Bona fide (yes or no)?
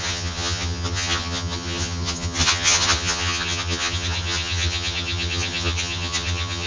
no